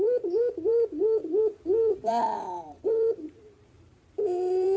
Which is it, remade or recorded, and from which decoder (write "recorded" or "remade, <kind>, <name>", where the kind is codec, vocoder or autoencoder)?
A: remade, vocoder, BigVGAN v2